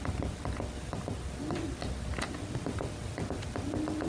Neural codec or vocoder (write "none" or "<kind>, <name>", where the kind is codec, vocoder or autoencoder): none